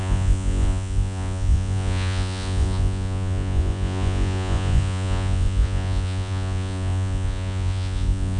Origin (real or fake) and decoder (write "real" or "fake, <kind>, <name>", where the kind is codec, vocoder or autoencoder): fake, vocoder, Vocos